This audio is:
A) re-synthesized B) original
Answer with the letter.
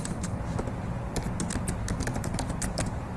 B